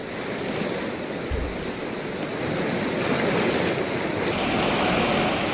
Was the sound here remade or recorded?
recorded